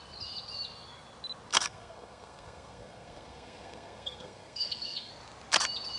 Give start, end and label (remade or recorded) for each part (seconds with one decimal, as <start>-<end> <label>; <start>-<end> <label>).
0.0-1.5 recorded; 1.5-5.1 remade; 5.1-6.0 recorded